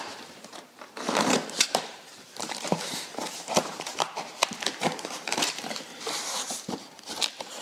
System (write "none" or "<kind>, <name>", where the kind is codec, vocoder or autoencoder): vocoder, BigVGAN v2